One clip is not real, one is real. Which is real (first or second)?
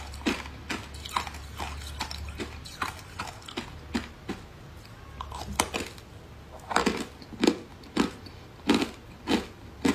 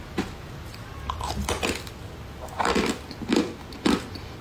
first